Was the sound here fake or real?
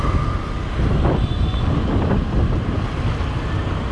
real